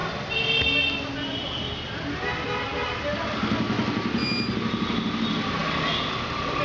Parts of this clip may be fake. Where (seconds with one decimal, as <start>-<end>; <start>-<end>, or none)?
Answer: none